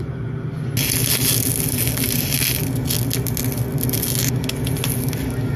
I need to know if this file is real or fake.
real